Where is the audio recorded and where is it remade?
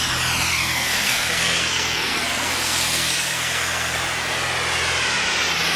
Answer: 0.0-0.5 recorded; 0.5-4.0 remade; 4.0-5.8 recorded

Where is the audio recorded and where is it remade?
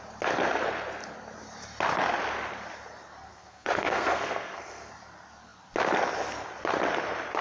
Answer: 0.0-3.3 recorded; 3.3-4.9 remade; 4.9-7.4 recorded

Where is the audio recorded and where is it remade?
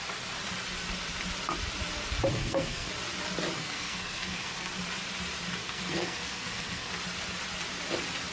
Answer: 0.0-2.3 recorded; 2.3-2.9 remade; 2.9-3.6 recorded; 3.6-4.7 remade; 4.7-5.6 recorded; 5.6-6.9 remade; 6.9-8.3 recorded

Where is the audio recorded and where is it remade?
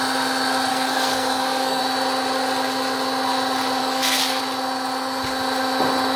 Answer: 0.0-0.7 recorded; 0.7-1.8 remade; 1.8-3.8 recorded; 3.8-4.4 remade; 4.4-6.2 recorded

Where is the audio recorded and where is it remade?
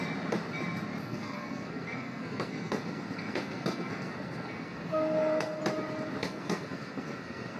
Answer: 0.0-1.0 recorded; 1.0-5.6 remade; 5.6-6.2 recorded; 6.2-7.6 remade